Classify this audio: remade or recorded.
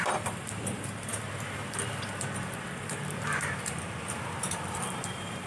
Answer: remade